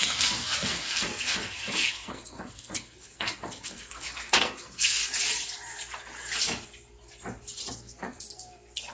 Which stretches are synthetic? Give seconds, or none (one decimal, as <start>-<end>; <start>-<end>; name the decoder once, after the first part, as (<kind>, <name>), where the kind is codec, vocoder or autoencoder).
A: 0.0-5.0 (codec, SNAC); 7.7-8.9